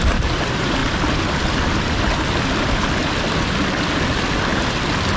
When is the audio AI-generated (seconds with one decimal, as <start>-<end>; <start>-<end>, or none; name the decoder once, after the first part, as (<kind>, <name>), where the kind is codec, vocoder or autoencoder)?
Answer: none